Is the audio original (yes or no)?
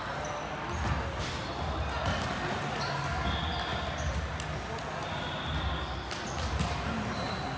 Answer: yes